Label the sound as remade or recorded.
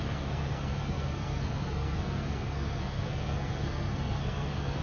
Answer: remade